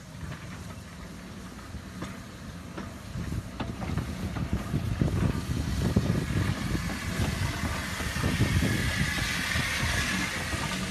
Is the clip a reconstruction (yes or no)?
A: no